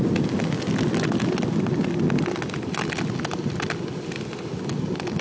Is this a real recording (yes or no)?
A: yes